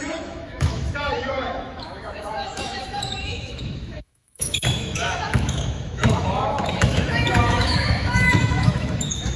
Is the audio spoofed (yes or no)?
yes